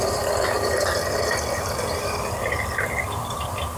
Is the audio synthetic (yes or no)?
yes